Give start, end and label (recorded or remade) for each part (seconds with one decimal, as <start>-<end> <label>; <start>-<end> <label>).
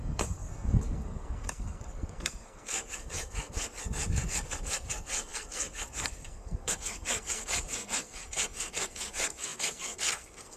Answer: 0.0-10.6 remade